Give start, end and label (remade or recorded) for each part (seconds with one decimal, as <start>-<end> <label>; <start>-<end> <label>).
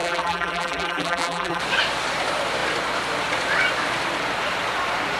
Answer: 0.0-1.6 remade; 1.6-5.2 recorded